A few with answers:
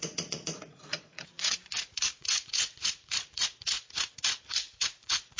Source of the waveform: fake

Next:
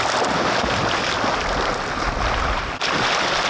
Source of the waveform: real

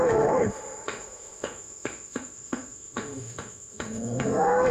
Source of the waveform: fake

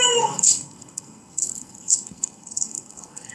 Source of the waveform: fake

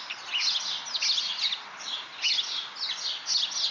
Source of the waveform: real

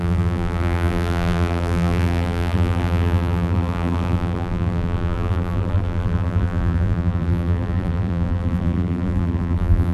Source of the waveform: fake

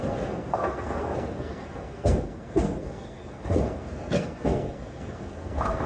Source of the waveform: fake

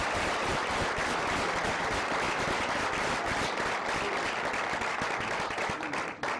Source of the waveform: real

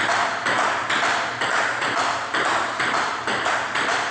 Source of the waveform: real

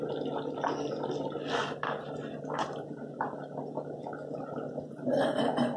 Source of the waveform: fake